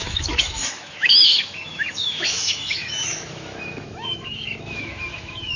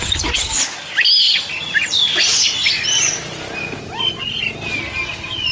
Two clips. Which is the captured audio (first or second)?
second